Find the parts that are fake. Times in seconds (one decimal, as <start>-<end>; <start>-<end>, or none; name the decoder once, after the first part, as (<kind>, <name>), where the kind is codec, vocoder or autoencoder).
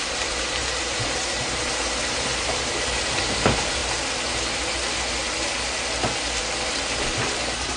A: 0.6-2.7 (vocoder, BigVGAN v2)